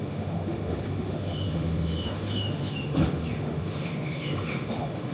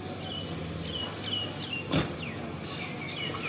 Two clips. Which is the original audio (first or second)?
second